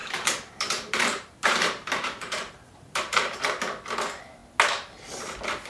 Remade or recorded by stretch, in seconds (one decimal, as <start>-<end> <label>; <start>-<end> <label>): 0.0-3.4 remade; 3.4-5.7 recorded